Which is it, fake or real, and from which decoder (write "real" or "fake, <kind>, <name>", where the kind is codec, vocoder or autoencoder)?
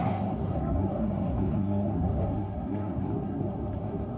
fake, codec, SNAC